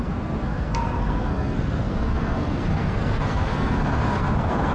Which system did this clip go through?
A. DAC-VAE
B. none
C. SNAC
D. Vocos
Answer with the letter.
C